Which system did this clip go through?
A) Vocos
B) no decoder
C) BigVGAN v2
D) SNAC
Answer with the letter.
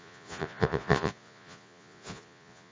A